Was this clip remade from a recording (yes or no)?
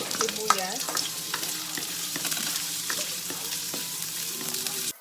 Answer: yes